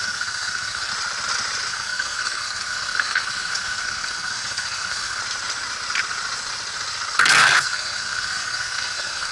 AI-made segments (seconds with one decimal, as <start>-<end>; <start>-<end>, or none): 0.0-0.9; 1.7-5.2; 7.2-9.3